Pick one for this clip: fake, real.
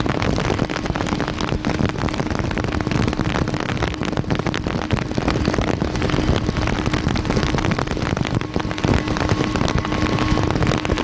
real